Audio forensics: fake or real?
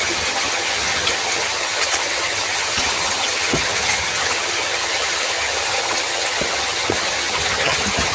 fake